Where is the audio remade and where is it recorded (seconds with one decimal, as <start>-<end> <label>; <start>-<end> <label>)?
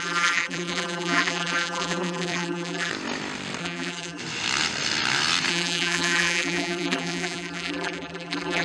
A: 0.0-2.9 remade; 2.9-3.6 recorded; 3.6-4.2 remade; 4.2-5.5 recorded; 5.5-8.6 remade